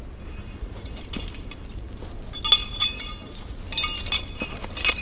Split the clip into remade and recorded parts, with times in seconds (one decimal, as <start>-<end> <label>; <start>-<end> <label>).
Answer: 0.0-0.4 recorded; 0.4-1.0 remade; 1.0-2.6 recorded; 2.6-3.6 remade; 3.6-5.0 recorded